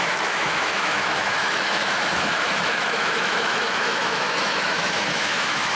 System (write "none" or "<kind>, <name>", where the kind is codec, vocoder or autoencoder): autoencoder, DAC-VAE